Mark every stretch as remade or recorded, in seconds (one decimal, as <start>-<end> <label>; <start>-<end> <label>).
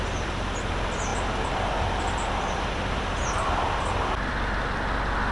0.0-5.3 recorded